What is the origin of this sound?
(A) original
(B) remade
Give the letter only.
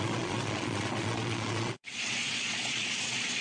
B